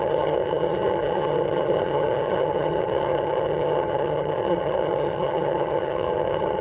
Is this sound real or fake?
fake